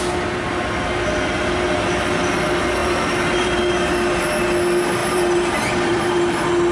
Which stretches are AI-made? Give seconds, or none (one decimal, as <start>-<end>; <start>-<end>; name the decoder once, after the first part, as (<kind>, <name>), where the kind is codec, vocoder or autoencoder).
5.0-6.2 (vocoder, BigVGAN v2)